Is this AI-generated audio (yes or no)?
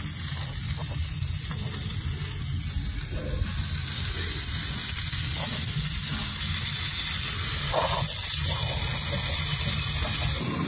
no